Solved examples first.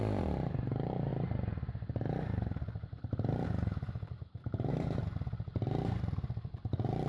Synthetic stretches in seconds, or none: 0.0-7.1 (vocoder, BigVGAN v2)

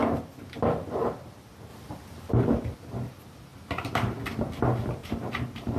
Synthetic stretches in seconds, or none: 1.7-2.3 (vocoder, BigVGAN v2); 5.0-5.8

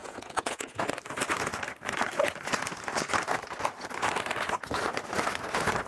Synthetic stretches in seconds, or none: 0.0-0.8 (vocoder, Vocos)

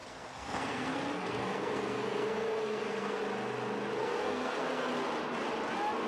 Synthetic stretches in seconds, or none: 0.0-3.2 (codec, SNAC); 4.0-4.9

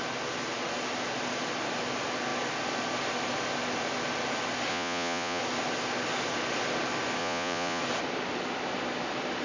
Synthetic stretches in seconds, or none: 4.7-5.4 (vocoder, Vocos); 7.2-7.8

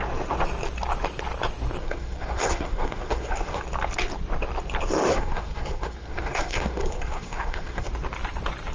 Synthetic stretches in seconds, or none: 1.8-3.6 (codec, SNAC); 5.1-7.9

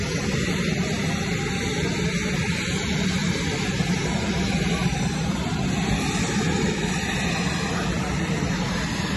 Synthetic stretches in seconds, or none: 3.2-5.6 (vocoder, BigVGAN v2)

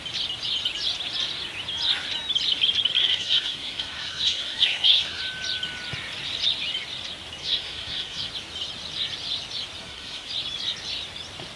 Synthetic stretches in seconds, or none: 3.0-5.2 (codec, SNAC); 7.4-8.3; 9.8-10.3